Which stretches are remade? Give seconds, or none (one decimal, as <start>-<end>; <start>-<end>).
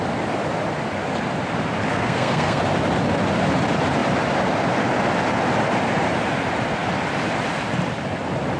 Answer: 1.9-2.6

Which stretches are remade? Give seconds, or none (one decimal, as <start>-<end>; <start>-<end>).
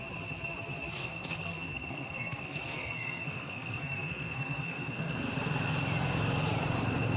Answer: 1.0-5.3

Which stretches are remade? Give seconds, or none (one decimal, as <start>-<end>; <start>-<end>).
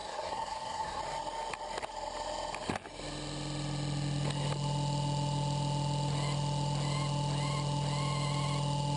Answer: 0.0-1.0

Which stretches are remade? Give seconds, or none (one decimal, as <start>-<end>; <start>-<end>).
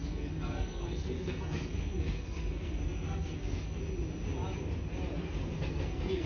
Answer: 0.0-3.8; 5.2-6.3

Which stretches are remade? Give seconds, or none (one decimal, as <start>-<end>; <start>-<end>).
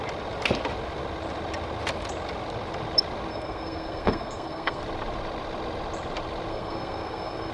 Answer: 3.3-4.8; 6.5-7.5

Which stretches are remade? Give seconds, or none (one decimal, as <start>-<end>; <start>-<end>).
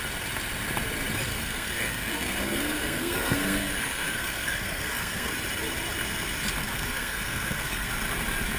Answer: 1.3-5.3; 6.6-7.9